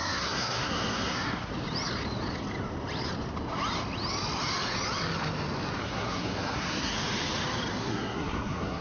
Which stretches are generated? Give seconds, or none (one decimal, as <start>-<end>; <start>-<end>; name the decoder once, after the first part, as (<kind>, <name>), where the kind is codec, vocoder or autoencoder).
0.0-1.5 (codec, SNAC); 5.8-6.9; 7.8-8.8